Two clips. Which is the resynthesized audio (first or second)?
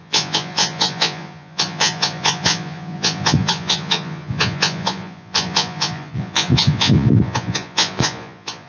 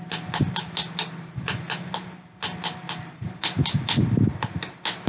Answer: first